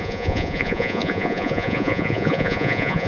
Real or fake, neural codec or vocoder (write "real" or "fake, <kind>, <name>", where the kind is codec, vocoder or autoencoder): fake, vocoder, Vocos